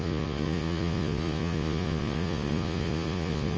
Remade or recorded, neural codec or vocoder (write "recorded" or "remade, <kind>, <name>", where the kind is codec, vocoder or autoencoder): remade, vocoder, Vocos